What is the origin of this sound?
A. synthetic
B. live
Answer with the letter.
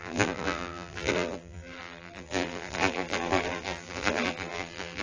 A